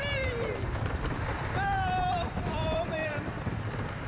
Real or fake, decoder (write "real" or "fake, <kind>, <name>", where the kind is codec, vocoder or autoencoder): fake, vocoder, BigVGAN v2